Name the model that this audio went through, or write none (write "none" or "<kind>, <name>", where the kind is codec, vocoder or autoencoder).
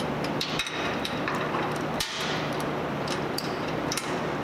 vocoder, BigVGAN v2